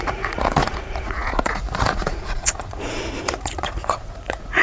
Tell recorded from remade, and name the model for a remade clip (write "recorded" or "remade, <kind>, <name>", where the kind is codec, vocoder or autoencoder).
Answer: remade, vocoder, Vocos